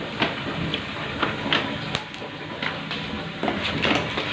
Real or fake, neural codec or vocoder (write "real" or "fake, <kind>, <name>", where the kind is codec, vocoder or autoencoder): real